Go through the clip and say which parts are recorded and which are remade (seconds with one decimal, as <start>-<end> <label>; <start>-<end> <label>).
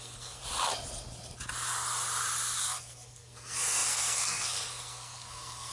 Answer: 0.0-0.4 remade; 0.4-2.6 recorded; 2.6-5.7 remade